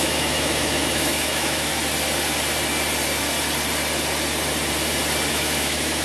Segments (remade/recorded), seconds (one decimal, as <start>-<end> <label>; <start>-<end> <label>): 0.0-1.7 remade; 1.7-5.3 recorded; 5.3-6.0 remade